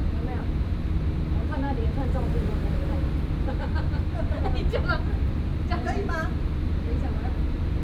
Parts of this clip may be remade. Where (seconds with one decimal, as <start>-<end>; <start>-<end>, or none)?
0.0-1.9; 5.5-7.8